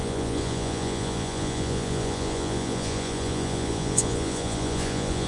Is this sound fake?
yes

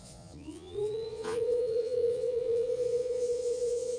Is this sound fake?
yes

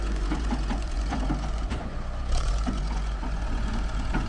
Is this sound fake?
yes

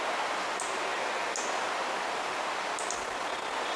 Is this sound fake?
no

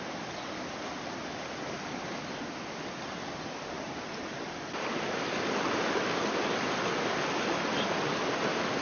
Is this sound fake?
no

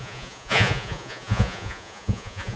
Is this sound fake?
yes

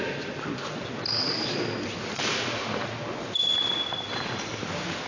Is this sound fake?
no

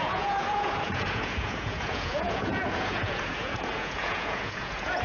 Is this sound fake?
yes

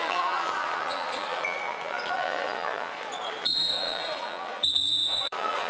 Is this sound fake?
yes